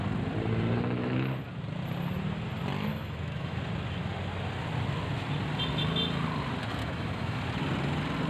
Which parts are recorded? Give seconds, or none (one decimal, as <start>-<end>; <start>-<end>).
0.0-2.9; 3.6-6.8; 7.4-8.3